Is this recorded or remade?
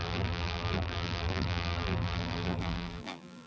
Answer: remade